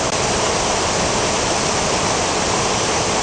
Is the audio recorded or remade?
recorded